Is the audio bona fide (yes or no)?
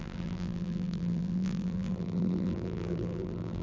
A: no